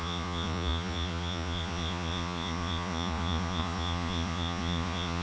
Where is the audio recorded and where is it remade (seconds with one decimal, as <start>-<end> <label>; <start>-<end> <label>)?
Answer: 0.0-5.2 remade